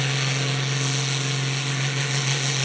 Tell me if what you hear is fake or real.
real